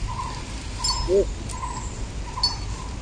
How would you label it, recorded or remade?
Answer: recorded